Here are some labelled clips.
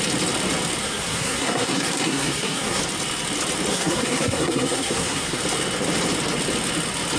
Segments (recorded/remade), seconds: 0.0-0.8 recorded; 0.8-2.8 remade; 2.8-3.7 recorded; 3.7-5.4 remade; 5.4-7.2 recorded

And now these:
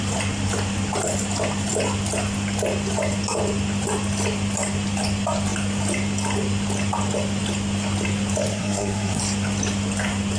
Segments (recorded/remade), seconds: 0.0-8.5 recorded; 8.5-9.2 remade; 9.2-10.4 recorded

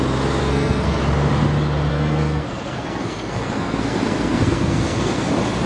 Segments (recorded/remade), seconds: 0.0-0.4 recorded; 0.4-1.0 remade; 1.0-1.9 recorded; 1.9-5.3 remade; 5.3-5.7 recorded

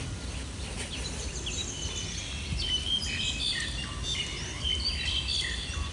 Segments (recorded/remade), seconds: 0.0-5.9 recorded